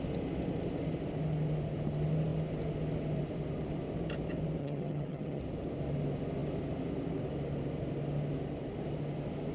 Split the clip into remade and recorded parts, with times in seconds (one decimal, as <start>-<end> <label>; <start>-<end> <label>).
0.0-4.6 recorded; 4.6-5.4 remade; 5.4-9.5 recorded